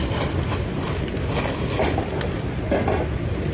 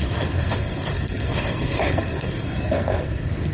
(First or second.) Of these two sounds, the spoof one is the second